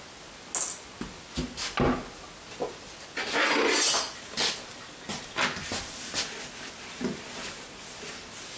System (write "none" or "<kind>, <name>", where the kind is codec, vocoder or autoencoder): none